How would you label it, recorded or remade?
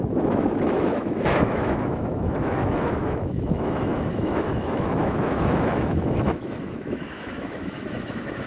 remade